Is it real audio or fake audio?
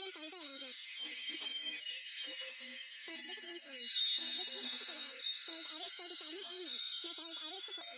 fake